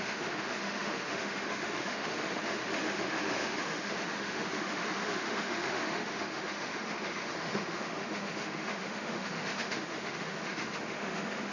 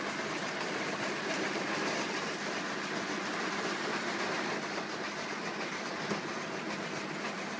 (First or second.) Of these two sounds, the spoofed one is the first